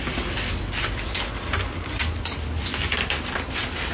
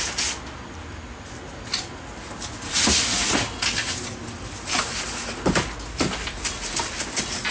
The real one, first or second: second